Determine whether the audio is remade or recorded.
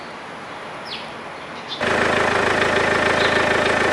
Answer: recorded